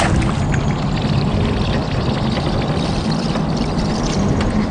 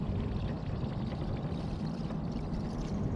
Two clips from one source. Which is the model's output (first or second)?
second